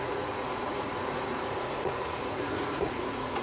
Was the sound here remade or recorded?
remade